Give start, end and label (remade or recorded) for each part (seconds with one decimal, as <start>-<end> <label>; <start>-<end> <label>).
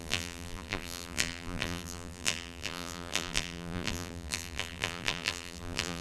0.0-6.0 remade